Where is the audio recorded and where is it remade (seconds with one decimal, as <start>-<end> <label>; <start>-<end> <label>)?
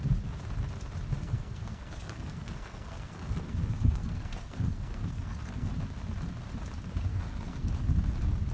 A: 0.0-1.2 recorded; 1.2-5.7 remade; 5.7-7.1 recorded; 7.1-7.7 remade; 7.7-8.5 recorded